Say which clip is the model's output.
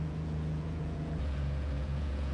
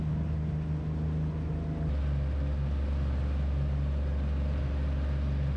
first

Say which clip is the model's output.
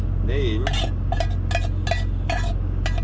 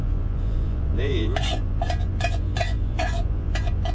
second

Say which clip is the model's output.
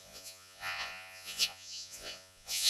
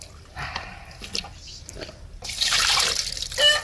first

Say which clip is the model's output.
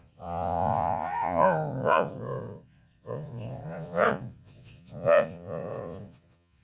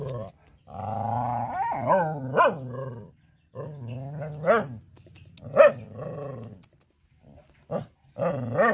first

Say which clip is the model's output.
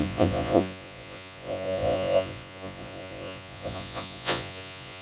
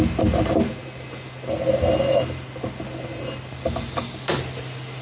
first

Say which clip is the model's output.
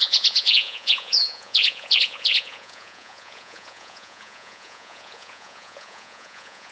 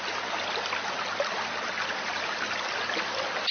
first